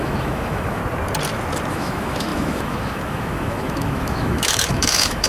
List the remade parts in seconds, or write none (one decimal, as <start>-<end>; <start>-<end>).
0.0-0.8; 1.7-5.3